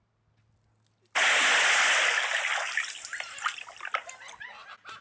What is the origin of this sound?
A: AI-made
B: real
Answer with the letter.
B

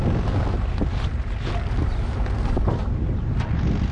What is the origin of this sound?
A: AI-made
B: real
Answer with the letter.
B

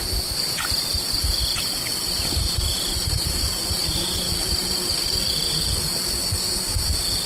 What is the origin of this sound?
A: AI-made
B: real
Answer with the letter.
B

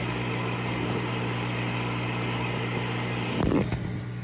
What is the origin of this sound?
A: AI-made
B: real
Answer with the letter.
B